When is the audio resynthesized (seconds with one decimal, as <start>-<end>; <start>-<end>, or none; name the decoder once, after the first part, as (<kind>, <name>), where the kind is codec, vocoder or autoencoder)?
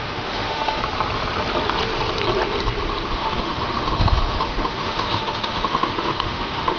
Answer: 0.0-0.8 (autoencoder, DAC-VAE); 3.1-6.8